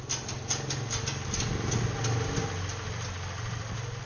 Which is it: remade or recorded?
recorded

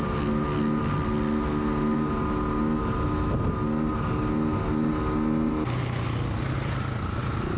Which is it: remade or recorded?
recorded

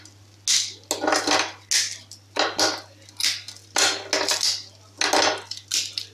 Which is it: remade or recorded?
recorded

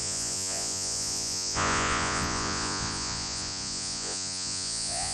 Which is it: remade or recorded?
remade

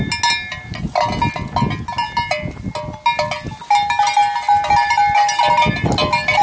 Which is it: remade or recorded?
recorded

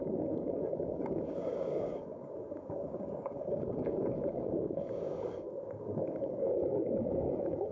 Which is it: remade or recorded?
remade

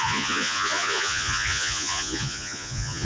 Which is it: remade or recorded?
remade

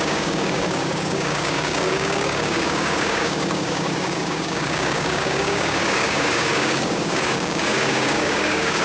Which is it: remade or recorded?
remade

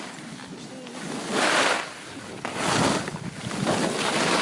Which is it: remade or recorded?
recorded